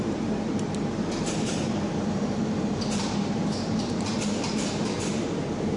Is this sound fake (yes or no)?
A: yes